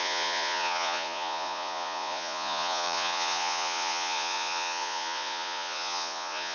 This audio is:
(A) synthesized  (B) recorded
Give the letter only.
A